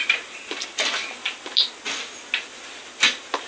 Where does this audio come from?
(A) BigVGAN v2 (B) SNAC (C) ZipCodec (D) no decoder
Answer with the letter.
D